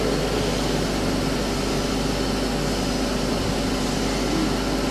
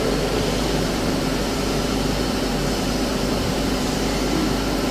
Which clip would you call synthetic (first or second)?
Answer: second